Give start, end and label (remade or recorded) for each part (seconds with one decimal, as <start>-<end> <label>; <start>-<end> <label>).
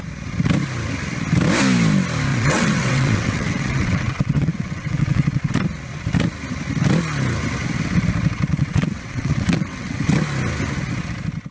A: 0.0-2.3 recorded; 2.3-5.5 remade; 5.5-8.5 recorded; 8.5-10.1 remade; 10.1-11.5 recorded